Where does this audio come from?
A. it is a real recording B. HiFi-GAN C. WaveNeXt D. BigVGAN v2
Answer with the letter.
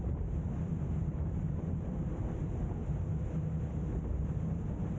A